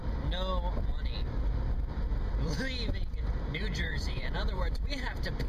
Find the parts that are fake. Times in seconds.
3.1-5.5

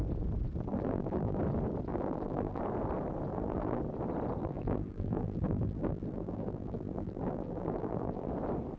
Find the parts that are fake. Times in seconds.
0.7-1.4; 1.9-2.6; 3.3-3.8; 4.4-8.3

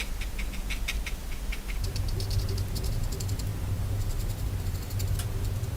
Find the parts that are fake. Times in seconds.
none

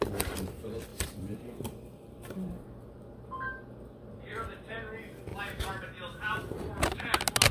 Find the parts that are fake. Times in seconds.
0.9-3.2; 5.3-6.7

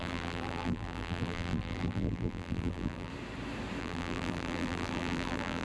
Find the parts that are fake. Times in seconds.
0.0-3.1; 3.8-5.6